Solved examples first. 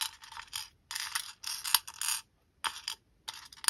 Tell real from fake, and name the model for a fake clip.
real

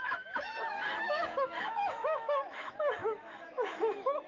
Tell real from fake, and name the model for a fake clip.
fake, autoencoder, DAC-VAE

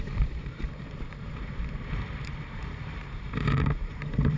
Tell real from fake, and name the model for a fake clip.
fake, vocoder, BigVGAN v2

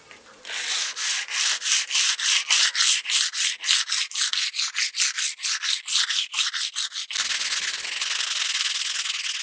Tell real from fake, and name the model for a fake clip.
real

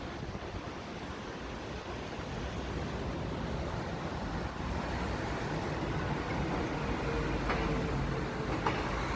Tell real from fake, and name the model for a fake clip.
real